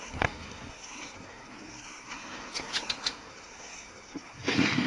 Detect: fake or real fake